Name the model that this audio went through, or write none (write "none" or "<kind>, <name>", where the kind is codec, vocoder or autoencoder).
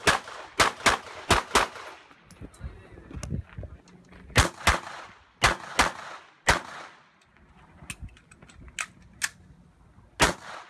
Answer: none